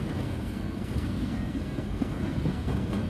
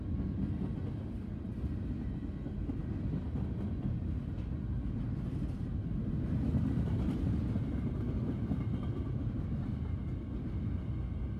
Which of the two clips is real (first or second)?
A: second